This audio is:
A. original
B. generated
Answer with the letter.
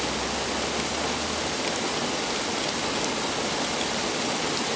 A